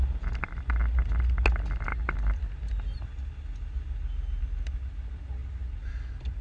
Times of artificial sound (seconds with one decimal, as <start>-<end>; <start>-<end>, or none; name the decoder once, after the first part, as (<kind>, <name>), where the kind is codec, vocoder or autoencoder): none